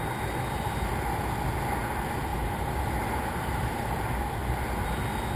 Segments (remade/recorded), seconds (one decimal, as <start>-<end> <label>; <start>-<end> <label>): 0.0-2.3 recorded; 2.3-4.0 remade; 4.0-5.4 recorded